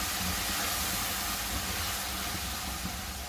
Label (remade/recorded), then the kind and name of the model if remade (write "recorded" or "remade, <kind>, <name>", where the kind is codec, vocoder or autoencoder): recorded